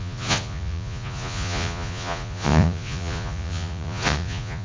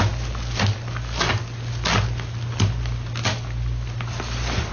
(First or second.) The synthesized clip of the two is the first